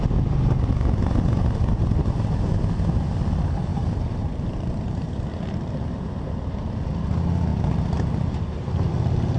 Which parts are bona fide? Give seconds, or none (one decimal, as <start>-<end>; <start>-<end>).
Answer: 0.0-3.7; 5.1-7.5; 8.9-9.4